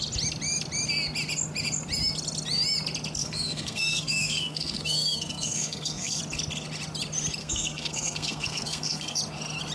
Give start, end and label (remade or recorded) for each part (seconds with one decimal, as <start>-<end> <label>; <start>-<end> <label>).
0.0-3.2 recorded; 3.2-6.2 remade; 6.2-7.4 recorded; 7.4-9.2 remade; 9.2-9.7 recorded